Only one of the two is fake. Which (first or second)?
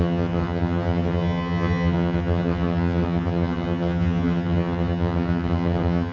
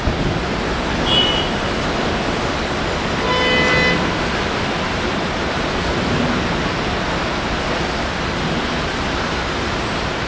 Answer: first